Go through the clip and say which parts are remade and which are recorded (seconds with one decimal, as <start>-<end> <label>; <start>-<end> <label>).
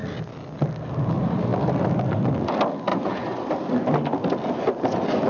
0.0-2.9 recorded; 2.9-3.5 remade; 3.5-5.3 recorded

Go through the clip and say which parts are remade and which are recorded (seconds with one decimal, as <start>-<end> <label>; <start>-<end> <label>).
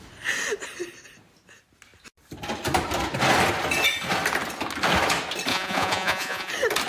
0.0-5.5 recorded; 5.5-6.5 remade; 6.5-6.9 recorded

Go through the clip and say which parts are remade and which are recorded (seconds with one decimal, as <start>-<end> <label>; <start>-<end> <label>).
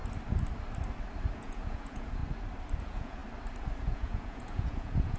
0.0-1.3 recorded; 1.3-2.2 remade; 2.2-2.8 recorded; 2.8-3.2 remade; 3.2-3.8 recorded; 3.8-5.2 remade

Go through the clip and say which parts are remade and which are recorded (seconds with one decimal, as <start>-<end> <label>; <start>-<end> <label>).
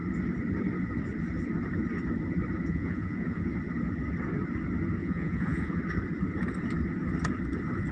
0.0-2.7 recorded; 2.7-3.5 remade; 3.5-5.0 recorded; 5.0-5.8 remade; 5.8-7.9 recorded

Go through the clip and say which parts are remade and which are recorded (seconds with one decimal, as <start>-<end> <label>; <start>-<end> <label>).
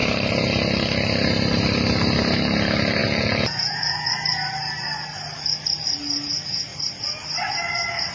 0.0-3.0 recorded; 3.0-4.1 remade; 4.1-8.1 recorded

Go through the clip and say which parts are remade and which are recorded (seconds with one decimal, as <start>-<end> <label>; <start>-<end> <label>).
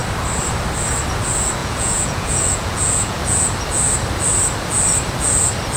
0.0-1.6 recorded; 1.6-3.2 remade; 3.2-5.8 recorded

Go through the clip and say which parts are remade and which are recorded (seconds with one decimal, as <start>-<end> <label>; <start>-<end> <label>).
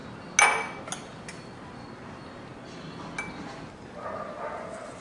0.0-5.0 recorded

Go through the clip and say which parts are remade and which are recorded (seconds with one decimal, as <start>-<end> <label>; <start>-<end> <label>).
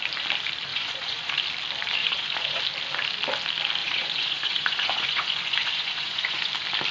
0.0-0.7 recorded; 0.7-1.3 remade; 1.3-2.0 recorded; 2.0-2.6 remade; 2.6-3.8 recorded; 3.8-6.5 remade; 6.5-6.9 recorded